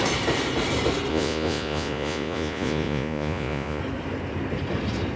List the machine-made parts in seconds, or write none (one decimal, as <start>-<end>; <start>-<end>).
1.1-3.8